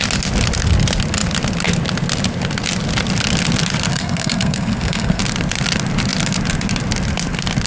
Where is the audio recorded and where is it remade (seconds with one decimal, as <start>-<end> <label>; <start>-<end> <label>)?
0.0-3.9 recorded; 3.9-5.2 remade; 5.2-7.7 recorded